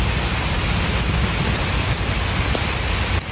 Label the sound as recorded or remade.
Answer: recorded